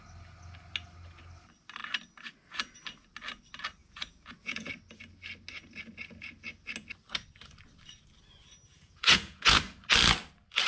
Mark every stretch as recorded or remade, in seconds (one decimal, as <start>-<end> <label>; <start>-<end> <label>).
0.0-3.8 recorded; 3.8-4.7 remade; 4.7-8.7 recorded; 8.7-9.6 remade; 9.6-10.7 recorded